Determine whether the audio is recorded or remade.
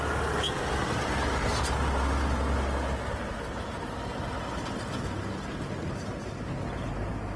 recorded